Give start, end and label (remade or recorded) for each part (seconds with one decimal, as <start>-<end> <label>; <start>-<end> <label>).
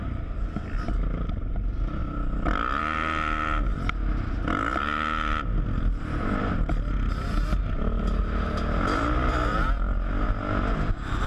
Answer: 0.0-11.3 recorded